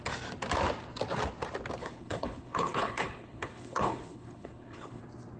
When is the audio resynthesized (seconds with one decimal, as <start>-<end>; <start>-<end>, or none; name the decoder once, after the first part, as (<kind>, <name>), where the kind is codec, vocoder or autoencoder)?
1.8-5.0 (codec, HILCodec)